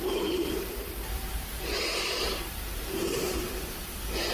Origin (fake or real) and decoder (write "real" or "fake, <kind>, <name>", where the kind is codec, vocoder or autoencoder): fake, vocoder, BigVGAN v2